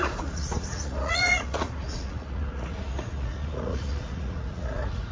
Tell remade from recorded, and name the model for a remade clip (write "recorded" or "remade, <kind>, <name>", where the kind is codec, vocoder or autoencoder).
remade, vocoder, Vocos